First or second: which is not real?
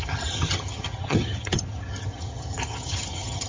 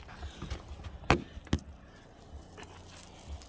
first